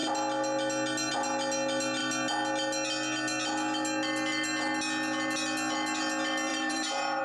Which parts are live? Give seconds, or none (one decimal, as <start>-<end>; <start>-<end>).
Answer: 0.0-6.5